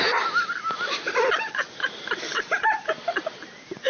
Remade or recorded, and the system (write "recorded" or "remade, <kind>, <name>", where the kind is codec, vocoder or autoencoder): recorded